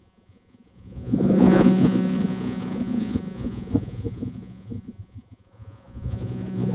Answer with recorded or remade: remade